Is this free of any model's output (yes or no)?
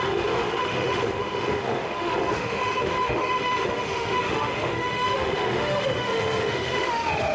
no